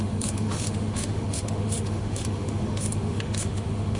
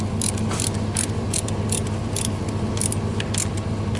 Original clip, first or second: second